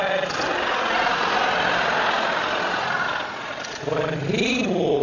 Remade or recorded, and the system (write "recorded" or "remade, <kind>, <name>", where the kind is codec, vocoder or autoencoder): recorded